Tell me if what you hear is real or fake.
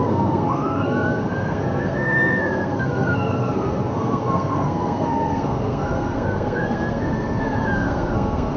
fake